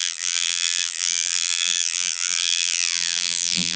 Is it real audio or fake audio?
fake